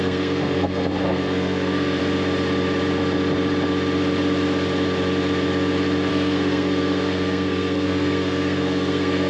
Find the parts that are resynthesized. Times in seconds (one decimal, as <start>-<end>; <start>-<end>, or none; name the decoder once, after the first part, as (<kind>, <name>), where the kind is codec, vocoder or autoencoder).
0.0-2.0 (codec, SNAC); 6.1-9.3